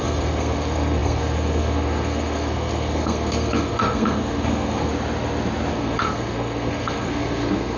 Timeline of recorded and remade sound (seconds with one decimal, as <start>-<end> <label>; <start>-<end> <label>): 0.0-4.9 remade; 4.9-5.7 recorded; 5.7-7.8 remade